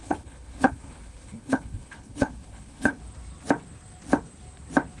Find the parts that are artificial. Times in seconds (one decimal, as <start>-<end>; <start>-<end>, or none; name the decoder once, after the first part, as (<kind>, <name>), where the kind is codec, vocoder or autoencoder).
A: 0.0-3.0 (codec, HILCodec)